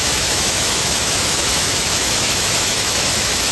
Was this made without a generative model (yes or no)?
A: no